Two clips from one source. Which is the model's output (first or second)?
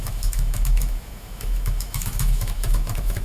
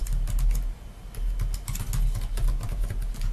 first